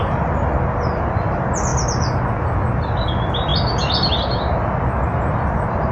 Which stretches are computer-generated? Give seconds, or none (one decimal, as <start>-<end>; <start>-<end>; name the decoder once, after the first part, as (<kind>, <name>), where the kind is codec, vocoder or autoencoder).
none